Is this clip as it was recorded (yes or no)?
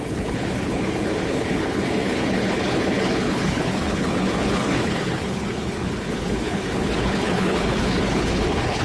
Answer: no